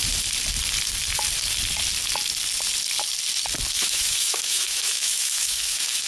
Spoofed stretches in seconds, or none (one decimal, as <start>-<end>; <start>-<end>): 3.7-6.1